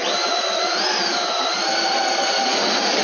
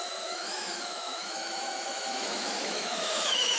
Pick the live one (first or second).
first